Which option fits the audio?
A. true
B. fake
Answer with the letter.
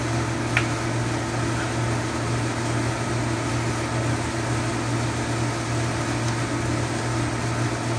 A